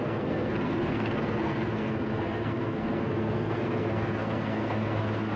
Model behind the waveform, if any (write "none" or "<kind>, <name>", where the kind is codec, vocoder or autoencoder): codec, SNAC